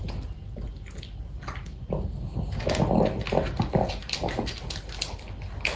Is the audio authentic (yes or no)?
yes